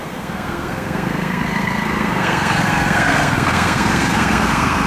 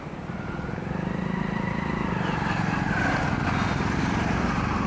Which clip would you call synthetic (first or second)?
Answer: first